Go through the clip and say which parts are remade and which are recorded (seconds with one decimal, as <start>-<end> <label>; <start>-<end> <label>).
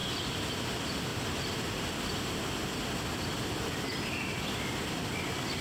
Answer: 0.0-0.6 remade; 0.6-1.1 recorded; 1.1-3.8 remade; 3.8-5.6 recorded